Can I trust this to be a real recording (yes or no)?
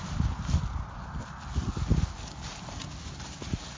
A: yes